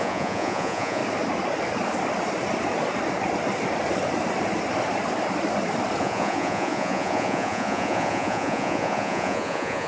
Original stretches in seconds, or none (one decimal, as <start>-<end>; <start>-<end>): 1.0-6.0